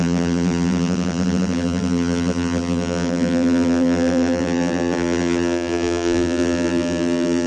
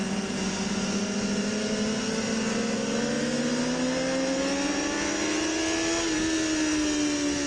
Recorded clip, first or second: second